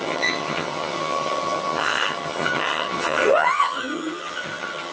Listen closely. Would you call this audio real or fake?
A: fake